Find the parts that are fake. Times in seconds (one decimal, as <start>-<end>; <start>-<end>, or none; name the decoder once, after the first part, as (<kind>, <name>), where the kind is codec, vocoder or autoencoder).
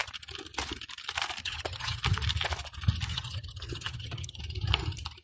1.4-2.0 (vocoder, HiFi-GAN); 3.1-4.4